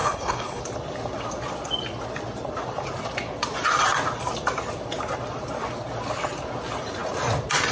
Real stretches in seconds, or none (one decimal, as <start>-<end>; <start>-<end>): 0.6-7.7